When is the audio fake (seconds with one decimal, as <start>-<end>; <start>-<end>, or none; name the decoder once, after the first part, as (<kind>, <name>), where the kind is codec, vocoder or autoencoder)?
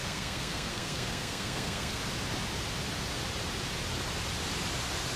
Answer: 0.0-2.0 (codec, SNAC)